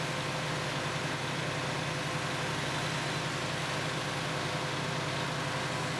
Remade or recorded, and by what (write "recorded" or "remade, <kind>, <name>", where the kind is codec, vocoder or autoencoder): recorded